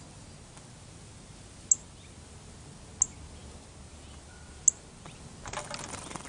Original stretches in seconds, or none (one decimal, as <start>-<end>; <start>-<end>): 0.0-6.3